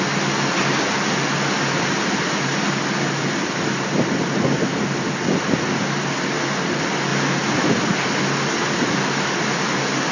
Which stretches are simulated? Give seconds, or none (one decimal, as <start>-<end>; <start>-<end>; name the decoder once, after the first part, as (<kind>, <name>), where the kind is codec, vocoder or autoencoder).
none